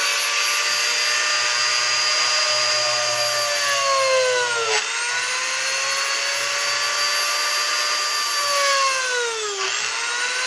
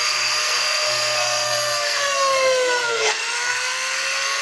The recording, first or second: first